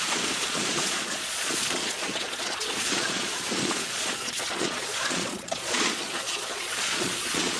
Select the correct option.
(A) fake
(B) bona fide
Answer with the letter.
A